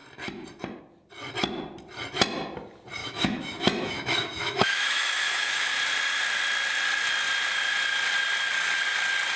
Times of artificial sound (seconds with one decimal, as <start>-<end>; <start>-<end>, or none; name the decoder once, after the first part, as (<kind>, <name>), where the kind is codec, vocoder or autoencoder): 3.0-5.7 (autoencoder, DAC-VAE)